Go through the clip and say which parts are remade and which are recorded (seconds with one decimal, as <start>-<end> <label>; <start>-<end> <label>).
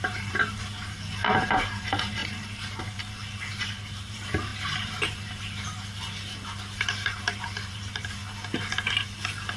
0.0-8.2 remade; 8.2-9.6 recorded